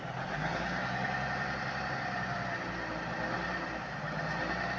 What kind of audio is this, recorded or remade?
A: recorded